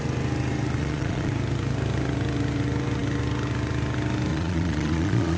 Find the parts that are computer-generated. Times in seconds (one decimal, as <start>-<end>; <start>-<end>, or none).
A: 0.8-1.3; 4.3-5.4